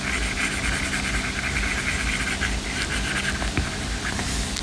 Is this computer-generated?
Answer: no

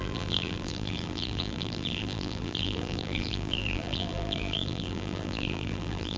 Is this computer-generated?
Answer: yes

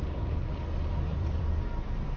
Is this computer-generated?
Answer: yes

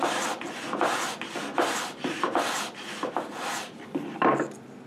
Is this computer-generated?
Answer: no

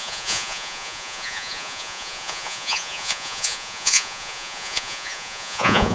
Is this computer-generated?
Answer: yes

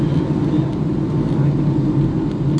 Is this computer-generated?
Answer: no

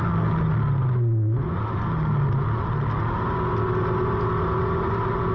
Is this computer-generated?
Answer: no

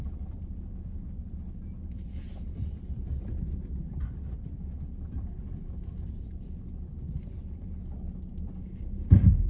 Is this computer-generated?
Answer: yes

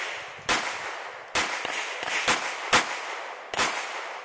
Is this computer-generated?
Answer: no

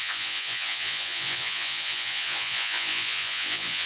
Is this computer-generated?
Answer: yes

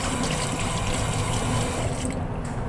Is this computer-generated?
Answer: no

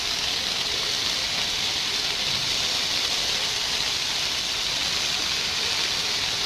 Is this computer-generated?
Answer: no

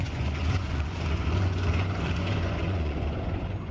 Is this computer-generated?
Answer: yes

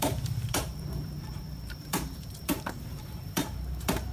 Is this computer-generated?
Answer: yes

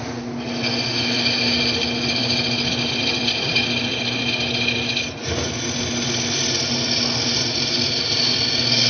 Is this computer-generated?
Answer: no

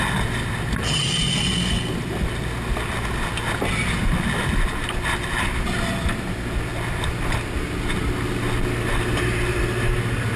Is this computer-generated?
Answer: no